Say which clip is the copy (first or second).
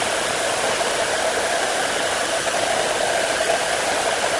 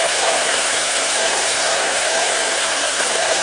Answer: second